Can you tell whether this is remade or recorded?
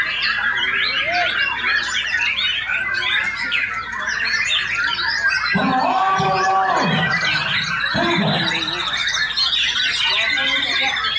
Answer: recorded